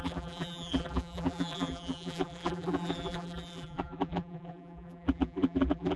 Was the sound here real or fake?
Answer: fake